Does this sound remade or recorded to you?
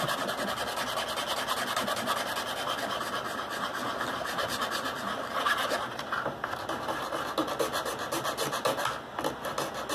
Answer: recorded